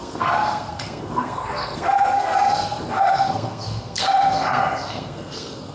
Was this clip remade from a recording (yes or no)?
yes